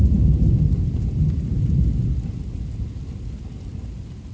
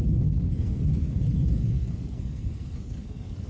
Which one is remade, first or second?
second